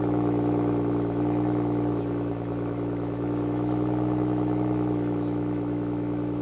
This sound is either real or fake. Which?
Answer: fake